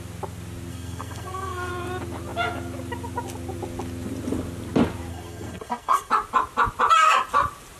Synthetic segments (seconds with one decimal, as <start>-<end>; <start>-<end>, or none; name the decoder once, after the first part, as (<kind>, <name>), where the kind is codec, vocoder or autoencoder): 0.7-1.7 (codec, SNAC); 5.1-6.1